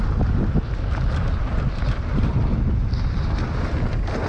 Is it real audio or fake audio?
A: real